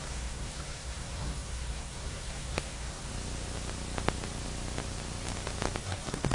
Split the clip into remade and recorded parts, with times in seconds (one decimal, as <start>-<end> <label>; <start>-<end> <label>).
0.0-3.1 remade; 3.1-5.8 recorded; 5.8-6.3 remade